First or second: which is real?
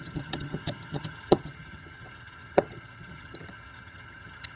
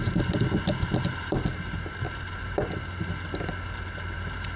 second